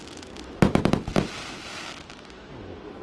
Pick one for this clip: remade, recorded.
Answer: recorded